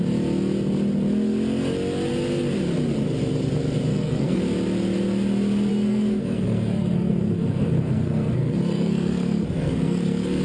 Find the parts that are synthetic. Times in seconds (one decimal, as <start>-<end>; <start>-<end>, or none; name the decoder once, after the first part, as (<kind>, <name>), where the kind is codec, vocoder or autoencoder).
3.9-4.4 (codec, SNAC); 5.7-10.4